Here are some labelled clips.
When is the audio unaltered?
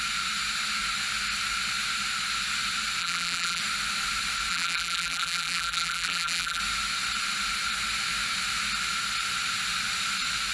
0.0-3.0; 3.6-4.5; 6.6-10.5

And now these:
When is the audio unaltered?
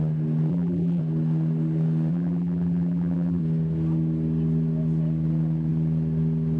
0.0-0.5; 1.0-2.1; 3.4-6.6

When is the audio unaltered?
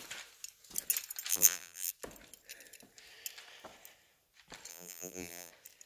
0.0-1.3; 1.9-4.7; 5.5-5.9